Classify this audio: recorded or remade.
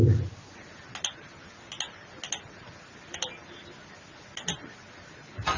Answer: recorded